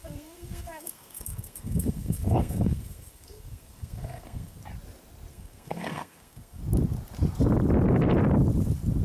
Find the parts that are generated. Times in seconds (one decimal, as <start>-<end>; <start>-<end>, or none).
0.0-4.6; 5.3-6.6